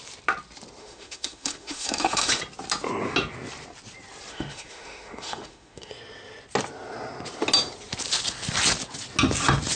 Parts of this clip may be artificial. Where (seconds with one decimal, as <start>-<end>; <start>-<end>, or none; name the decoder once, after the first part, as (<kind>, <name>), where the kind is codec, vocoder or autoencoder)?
0.8-2.4 (autoencoder, DAC-VAE); 4.3-5.9